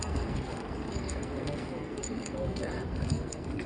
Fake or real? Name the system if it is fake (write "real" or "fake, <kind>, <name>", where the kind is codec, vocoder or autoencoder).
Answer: fake, codec, SNAC